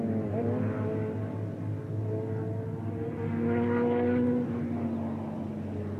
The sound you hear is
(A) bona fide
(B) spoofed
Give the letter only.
A